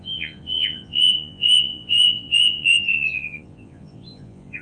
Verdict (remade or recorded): remade